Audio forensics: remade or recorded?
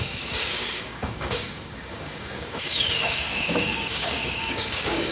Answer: remade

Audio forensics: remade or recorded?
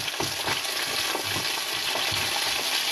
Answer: recorded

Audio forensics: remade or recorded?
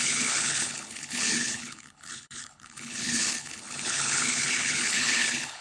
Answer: remade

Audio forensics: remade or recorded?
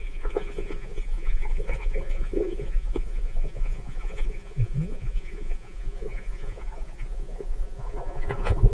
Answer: remade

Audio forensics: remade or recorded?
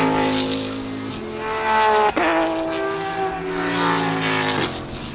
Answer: recorded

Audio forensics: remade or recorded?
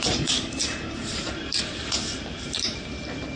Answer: remade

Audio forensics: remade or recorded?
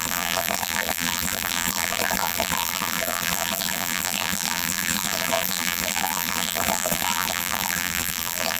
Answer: remade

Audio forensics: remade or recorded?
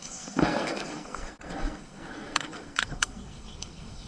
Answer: remade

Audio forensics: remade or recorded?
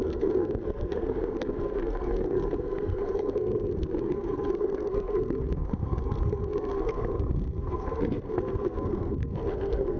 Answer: remade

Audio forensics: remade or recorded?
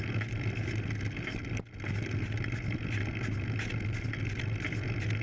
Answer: recorded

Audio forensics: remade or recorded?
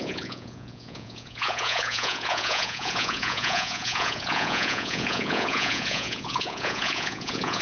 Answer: remade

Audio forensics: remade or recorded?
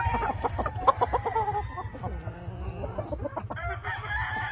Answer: recorded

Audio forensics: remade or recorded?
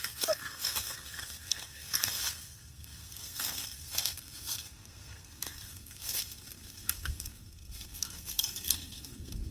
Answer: remade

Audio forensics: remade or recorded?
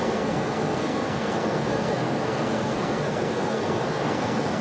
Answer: remade